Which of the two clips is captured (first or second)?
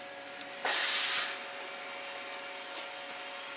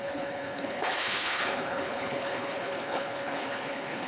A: first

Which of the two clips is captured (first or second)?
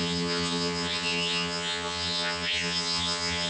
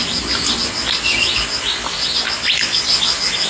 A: second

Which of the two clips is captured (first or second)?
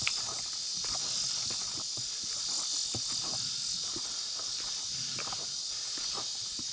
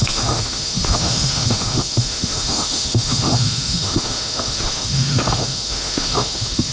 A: first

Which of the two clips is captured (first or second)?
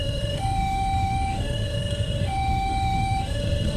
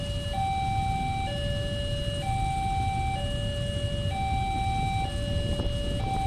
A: second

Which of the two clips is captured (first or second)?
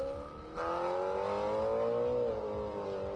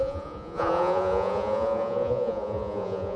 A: first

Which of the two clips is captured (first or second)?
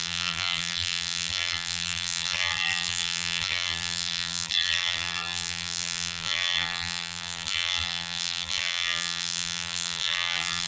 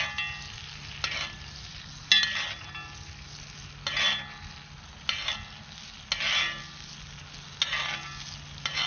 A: second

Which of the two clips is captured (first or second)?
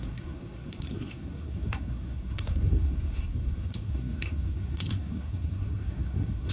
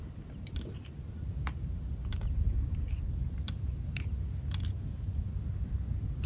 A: second